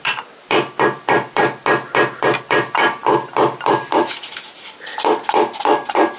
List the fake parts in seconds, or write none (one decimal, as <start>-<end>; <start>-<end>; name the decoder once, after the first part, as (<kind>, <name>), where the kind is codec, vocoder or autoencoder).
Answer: 0.0-1.4 (vocoder, BigVGAN v2); 2.1-3.0; 3.7-6.2